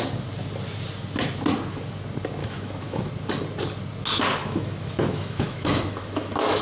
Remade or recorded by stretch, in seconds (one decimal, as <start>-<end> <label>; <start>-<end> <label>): 0.0-2.4 recorded; 2.4-3.1 remade; 3.1-4.4 recorded; 4.4-6.6 remade